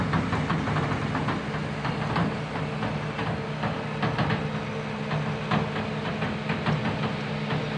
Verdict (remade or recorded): recorded